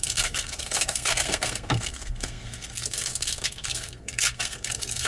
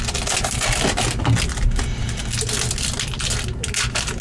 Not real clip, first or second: first